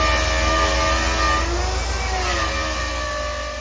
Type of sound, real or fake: real